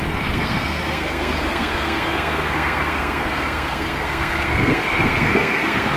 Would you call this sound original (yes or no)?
no